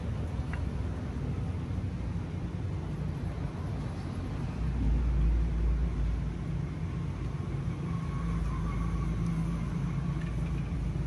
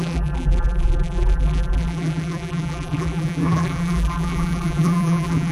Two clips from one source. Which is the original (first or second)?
first